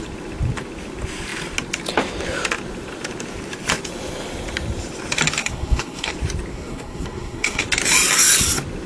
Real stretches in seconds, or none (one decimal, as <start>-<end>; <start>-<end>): 0.0-5.4; 6.1-6.5; 7.6-8.9